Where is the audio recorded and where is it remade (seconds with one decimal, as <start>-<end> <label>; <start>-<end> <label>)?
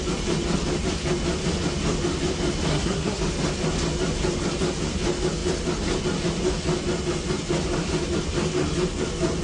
0.0-2.7 recorded; 2.7-3.2 remade; 3.2-9.4 recorded